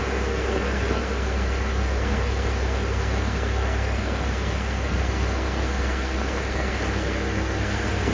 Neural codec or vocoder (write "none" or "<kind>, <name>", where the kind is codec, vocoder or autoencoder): codec, SNAC